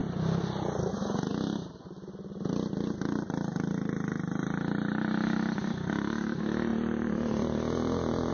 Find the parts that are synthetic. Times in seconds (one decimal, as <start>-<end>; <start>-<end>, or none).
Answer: 0.0-0.9; 1.3-2.5; 6.7-8.3